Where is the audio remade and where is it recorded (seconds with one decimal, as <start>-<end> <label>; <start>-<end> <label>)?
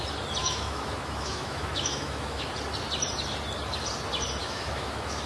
0.0-0.4 recorded; 0.4-2.5 remade; 2.5-4.4 recorded; 4.4-5.3 remade